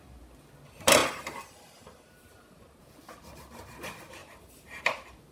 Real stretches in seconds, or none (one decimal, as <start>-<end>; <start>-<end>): 0.0-1.0; 2.8-4.2; 4.8-5.3